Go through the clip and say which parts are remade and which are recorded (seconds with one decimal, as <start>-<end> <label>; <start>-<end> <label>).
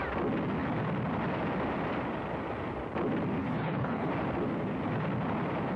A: 0.0-3.4 recorded; 3.4-4.1 remade; 4.1-5.8 recorded